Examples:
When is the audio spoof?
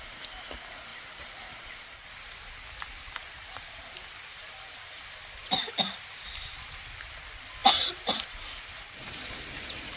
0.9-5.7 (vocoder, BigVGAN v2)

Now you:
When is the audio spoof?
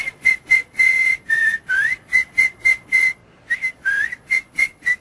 0.0-3.2 (vocoder, Vocos); 3.7-5.0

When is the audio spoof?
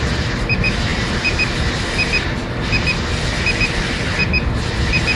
none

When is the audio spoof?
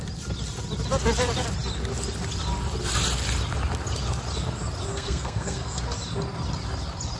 4.9-5.8 (codec, SNAC)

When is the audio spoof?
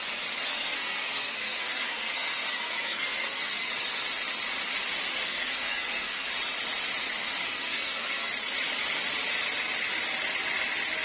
0.5-3.7 (codec, SNAC); 5.2-6.3; 7.4-8.3